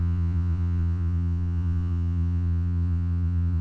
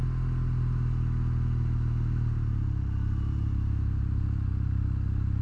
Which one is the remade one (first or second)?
first